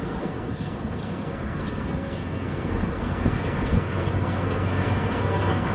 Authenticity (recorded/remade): remade